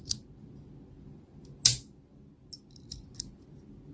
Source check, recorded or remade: recorded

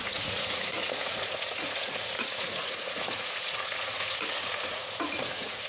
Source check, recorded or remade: remade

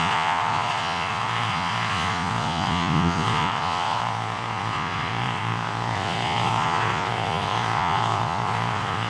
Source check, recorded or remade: remade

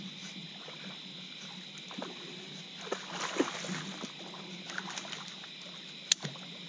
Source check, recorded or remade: recorded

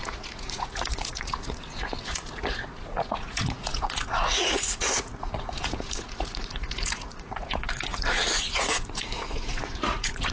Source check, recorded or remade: remade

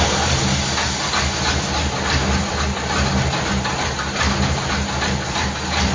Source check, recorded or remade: recorded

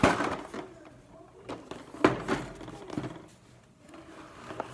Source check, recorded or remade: recorded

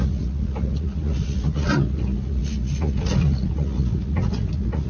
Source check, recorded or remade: remade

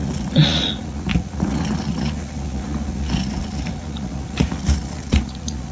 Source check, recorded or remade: remade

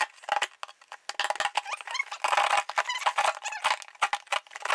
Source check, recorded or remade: recorded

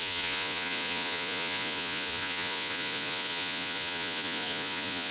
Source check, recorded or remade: remade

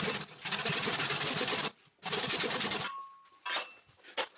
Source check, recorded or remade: recorded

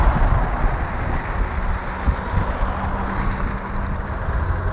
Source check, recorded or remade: recorded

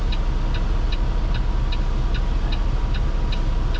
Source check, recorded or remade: recorded